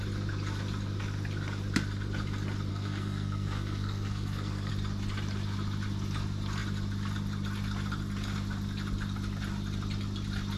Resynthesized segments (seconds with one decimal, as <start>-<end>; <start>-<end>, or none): 2.7-4.7